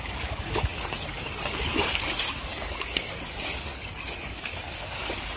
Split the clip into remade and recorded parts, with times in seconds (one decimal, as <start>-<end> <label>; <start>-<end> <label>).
0.0-5.4 remade